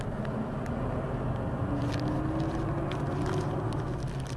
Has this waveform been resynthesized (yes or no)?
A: no